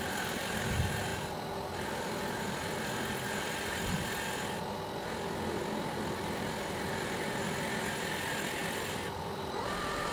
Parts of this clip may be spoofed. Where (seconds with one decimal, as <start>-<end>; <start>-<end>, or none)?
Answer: none